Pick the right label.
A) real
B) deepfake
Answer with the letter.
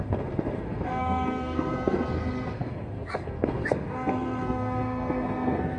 B